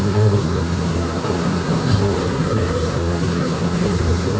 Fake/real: fake